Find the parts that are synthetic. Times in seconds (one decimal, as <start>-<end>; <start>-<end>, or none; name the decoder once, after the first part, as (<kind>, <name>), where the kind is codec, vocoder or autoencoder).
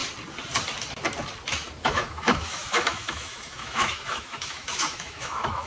1.8-5.7 (autoencoder, DAC-VAE)